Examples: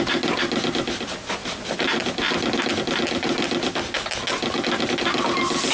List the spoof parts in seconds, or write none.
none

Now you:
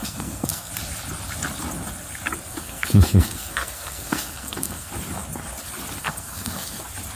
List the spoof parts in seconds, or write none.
0.0-0.7 (codec, SNAC); 2.5-4.9; 6.0-6.8